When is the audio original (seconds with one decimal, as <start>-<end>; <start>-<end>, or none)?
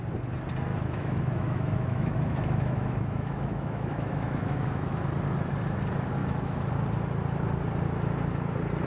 0.0-0.7; 5.0-6.2; 6.7-8.9